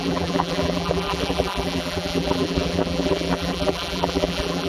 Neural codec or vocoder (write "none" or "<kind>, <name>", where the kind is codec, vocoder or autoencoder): vocoder, BigVGAN v2